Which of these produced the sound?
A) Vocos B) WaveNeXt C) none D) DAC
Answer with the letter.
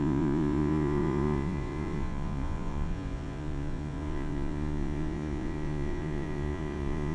A